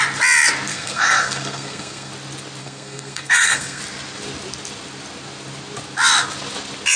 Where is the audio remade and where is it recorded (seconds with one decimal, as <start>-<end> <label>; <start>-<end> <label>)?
0.0-0.7 recorded; 0.7-2.1 remade; 2.1-2.6 recorded; 2.6-3.8 remade; 3.8-7.0 recorded